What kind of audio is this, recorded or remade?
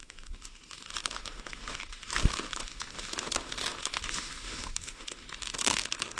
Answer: remade